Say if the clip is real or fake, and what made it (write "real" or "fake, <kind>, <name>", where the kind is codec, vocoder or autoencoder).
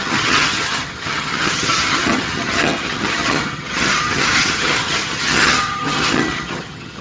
fake, vocoder, HiFi-GAN